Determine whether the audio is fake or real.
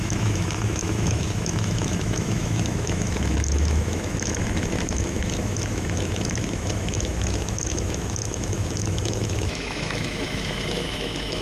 fake